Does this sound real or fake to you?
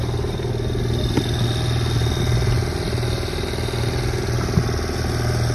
real